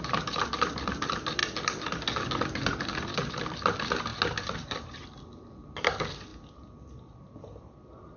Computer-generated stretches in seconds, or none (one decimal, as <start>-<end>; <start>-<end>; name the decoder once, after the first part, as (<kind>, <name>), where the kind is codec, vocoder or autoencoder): none